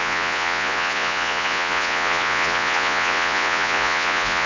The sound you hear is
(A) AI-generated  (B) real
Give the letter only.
A